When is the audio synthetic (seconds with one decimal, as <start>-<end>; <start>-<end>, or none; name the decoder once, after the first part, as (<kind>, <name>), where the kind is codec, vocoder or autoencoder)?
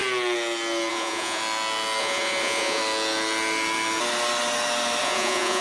0.9-1.4 (vocoder, Vocos); 2.0-2.8; 5.0-5.6